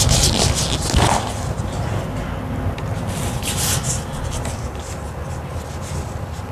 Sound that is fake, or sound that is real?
real